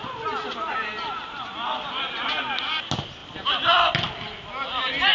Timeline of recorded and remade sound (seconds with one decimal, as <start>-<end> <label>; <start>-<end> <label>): 0.0-5.1 recorded